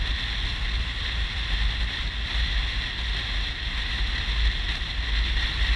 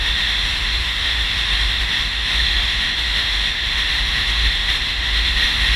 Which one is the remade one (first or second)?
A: second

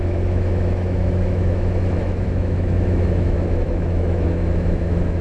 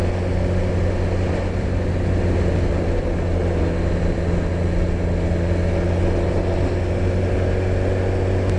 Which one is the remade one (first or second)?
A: first